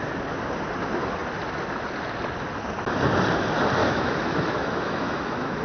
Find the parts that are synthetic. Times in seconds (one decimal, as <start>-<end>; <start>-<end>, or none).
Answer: 3.8-5.6